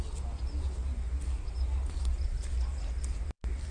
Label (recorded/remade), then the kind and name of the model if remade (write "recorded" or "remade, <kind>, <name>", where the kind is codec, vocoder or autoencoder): recorded